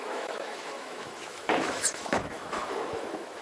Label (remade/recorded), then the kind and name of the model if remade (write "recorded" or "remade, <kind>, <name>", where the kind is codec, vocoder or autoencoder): remade, autoencoder, DAC-VAE